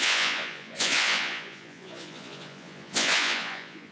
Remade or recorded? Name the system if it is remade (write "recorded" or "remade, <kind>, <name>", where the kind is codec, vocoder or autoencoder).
remade, vocoder, Vocos